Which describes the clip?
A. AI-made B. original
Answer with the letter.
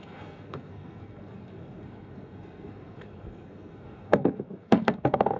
A